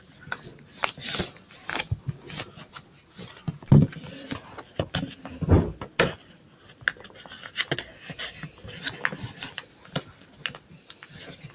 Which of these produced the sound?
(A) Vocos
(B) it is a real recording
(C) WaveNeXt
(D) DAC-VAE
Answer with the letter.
B